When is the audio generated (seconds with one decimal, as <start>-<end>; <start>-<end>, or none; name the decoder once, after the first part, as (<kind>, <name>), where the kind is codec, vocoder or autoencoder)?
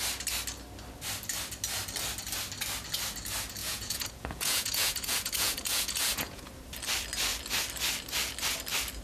3.6-6.5 (vocoder, Vocos)